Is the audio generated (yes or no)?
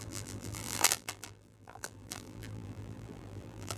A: yes